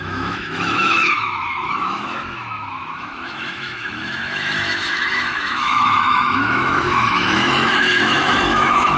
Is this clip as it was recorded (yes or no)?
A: no